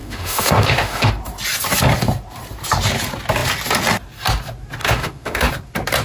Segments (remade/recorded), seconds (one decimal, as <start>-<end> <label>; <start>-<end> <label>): 0.0-1.1 remade; 1.1-4.8 recorded; 4.8-5.5 remade; 5.5-6.0 recorded